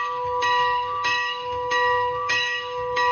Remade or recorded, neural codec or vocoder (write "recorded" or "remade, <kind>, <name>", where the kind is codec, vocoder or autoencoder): remade, codec, DAC